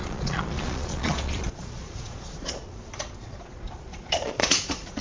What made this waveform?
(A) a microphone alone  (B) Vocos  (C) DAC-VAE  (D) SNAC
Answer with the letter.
B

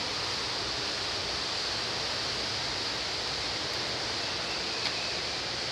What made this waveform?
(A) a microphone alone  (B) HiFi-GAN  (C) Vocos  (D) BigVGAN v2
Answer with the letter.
A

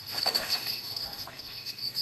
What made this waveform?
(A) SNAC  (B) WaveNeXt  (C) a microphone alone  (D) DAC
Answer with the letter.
D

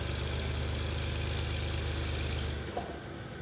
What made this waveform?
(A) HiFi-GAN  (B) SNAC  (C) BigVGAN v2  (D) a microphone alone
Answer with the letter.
D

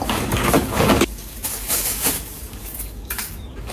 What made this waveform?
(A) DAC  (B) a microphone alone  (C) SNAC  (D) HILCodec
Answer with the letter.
A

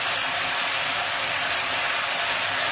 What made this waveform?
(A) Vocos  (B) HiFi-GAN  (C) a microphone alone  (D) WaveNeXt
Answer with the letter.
C